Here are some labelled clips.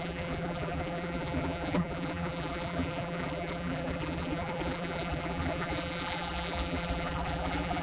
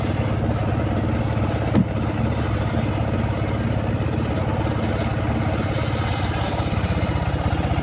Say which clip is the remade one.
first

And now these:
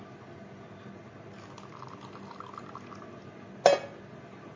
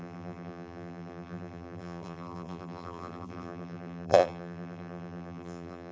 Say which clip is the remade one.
second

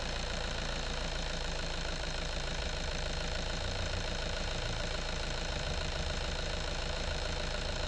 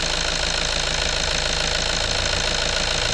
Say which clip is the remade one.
first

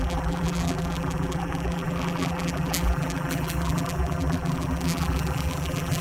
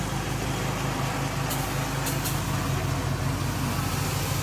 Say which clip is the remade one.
first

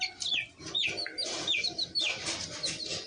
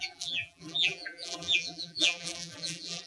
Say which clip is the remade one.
second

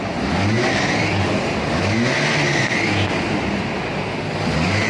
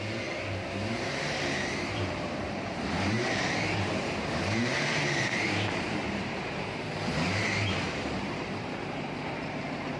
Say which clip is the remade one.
second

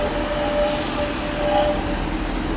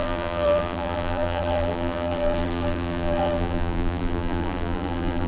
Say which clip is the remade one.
second